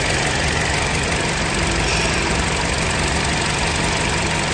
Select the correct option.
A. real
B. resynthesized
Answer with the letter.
A